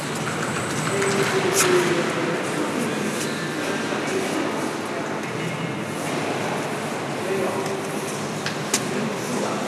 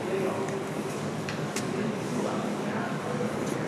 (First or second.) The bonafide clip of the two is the first